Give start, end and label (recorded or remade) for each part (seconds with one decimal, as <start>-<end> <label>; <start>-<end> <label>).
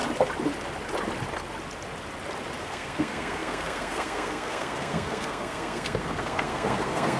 0.0-2.6 recorded; 2.6-7.2 remade